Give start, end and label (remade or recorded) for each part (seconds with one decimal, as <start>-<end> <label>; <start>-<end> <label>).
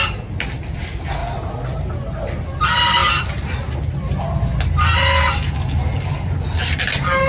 0.0-7.3 recorded